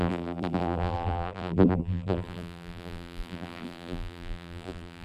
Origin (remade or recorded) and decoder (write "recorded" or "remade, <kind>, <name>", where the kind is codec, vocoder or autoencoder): remade, vocoder, BigVGAN v2